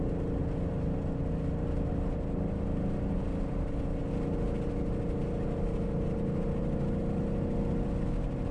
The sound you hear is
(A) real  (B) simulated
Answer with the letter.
A